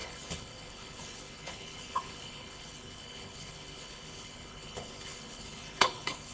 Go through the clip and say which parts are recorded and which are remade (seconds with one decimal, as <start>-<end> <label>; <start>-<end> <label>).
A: 0.0-6.3 remade